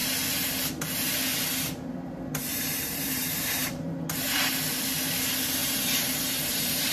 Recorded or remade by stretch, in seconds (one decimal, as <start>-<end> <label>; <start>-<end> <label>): 0.0-2.5 recorded; 2.5-4.5 remade; 4.5-5.6 recorded; 5.6-6.9 remade